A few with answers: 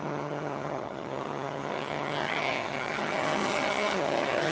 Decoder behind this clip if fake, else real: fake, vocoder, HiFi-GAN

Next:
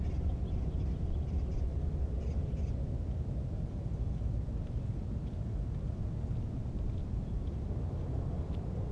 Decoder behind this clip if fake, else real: real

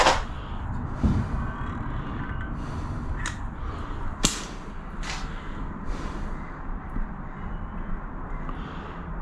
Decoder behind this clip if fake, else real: real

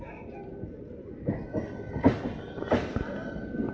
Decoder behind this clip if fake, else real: real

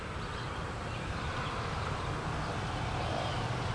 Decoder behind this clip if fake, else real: real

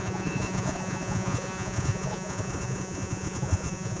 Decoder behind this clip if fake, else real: fake, vocoder, Vocos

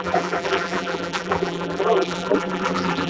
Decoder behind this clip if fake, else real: fake, vocoder, BigVGAN v2